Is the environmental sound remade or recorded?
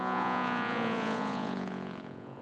remade